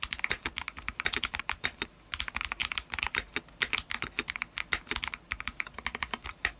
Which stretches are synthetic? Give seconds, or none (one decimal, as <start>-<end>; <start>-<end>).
none